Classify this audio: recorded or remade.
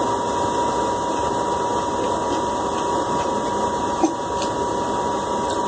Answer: recorded